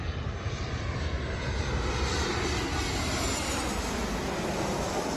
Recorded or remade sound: recorded